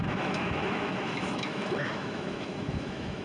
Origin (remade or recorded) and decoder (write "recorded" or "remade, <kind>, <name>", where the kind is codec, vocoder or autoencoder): remade, autoencoder, DAC-VAE